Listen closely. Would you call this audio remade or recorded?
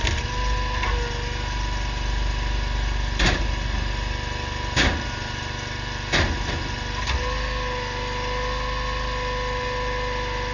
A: recorded